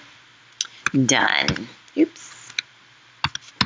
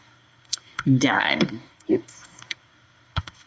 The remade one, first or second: second